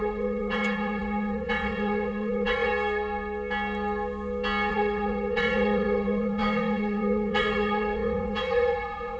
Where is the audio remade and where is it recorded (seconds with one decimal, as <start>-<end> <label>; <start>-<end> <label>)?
0.0-2.7 remade; 2.7-4.7 recorded; 4.7-9.2 remade